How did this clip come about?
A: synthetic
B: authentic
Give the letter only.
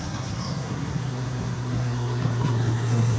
A